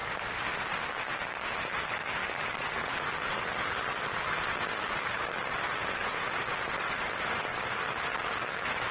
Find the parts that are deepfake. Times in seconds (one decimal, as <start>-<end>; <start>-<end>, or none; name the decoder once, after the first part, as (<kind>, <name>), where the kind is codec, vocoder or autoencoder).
0.8-2.2 (autoencoder, DAC-VAE); 7.1-7.5; 8.4-8.9